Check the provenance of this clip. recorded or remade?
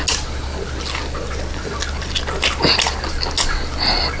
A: recorded